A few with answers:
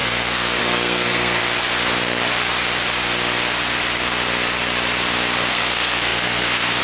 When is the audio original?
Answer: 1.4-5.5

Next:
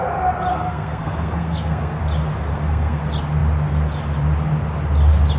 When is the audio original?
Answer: 0.0-0.5; 2.0-2.5; 3.0-5.4

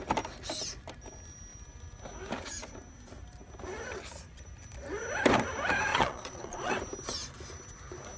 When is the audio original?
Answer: 0.0-5.9; 6.7-8.2

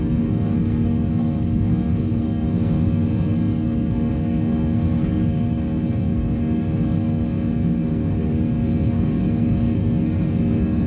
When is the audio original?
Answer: none

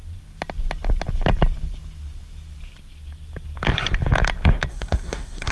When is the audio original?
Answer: 0.0-4.7